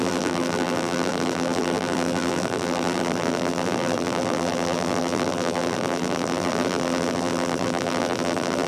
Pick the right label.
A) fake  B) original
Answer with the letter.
A